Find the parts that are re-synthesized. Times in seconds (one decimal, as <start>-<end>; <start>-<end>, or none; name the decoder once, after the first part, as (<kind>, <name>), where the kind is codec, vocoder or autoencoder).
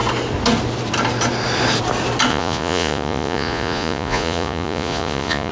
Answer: 2.3-5.5 (vocoder, Vocos)